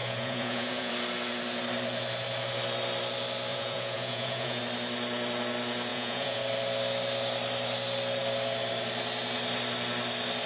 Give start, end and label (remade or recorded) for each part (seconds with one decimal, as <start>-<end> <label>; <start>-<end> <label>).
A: 0.0-0.9 remade; 0.9-3.5 recorded; 3.5-4.6 remade; 4.6-5.9 recorded; 5.9-6.4 remade; 6.4-10.5 recorded